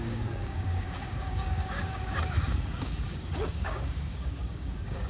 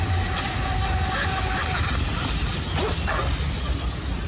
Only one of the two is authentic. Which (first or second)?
second